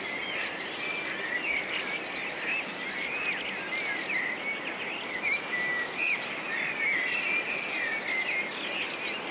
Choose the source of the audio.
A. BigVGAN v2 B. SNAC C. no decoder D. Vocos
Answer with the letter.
C